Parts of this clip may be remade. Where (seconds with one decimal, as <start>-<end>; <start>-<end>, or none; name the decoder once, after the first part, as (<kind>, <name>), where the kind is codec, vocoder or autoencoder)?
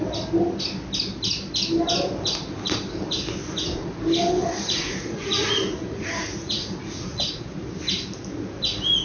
4.4-7.4 (vocoder, Vocos)